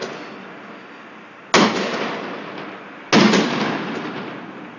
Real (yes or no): yes